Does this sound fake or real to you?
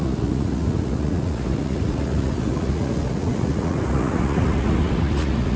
fake